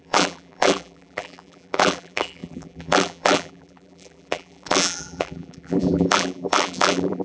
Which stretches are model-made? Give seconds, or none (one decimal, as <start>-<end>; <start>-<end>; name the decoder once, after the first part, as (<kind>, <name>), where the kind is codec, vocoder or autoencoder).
0.0-7.2 (vocoder, BigVGAN v2)